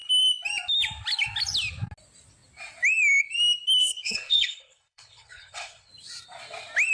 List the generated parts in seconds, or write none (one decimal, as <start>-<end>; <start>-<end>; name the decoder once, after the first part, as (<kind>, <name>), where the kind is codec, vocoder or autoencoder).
3.8-5.9 (codec, HILCodec)